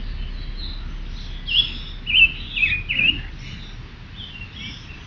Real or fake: real